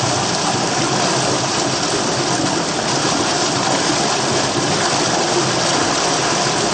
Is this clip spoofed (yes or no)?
no